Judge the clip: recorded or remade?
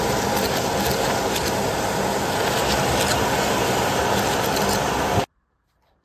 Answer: recorded